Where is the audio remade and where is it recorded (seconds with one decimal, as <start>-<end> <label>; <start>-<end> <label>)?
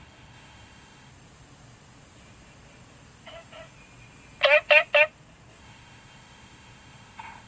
0.0-1.1 remade; 1.1-5.6 recorded; 5.6-7.5 remade